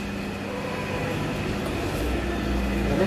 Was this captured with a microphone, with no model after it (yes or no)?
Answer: yes